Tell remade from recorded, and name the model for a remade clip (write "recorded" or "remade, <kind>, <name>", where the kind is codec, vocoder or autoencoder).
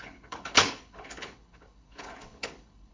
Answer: remade, codec, HILCodec